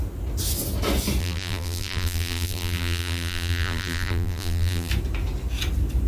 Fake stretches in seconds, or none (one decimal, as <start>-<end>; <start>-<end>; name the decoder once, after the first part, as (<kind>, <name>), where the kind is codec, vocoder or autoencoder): 1.2-4.9 (vocoder, BigVGAN v2)

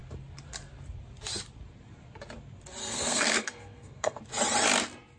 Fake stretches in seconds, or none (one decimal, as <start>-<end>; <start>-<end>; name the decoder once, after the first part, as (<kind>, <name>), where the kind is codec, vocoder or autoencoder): 2.8-4.2 (codec, SNAC)

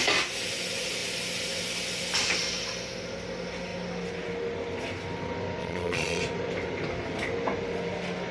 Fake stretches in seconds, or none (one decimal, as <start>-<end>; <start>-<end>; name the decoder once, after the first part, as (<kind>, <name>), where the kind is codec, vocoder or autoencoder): 5.6-6.2 (vocoder, Vocos)

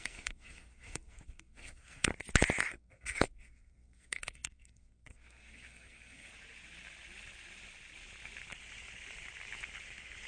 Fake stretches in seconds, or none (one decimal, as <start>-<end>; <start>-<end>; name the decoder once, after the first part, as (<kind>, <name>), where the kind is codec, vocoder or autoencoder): 0.0-2.1 (codec, SNAC); 2.7-6.3

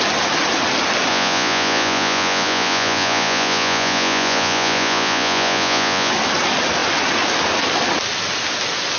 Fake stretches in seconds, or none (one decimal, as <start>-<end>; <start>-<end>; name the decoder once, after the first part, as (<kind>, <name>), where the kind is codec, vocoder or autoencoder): 1.1-6.1 (vocoder, Vocos)